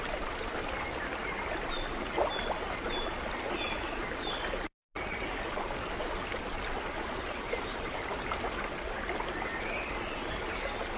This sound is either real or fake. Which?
real